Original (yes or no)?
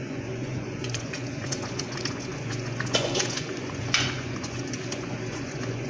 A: no